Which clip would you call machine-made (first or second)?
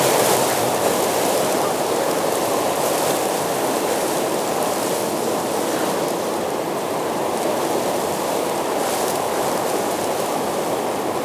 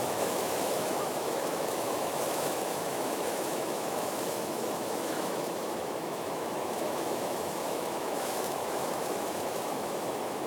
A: second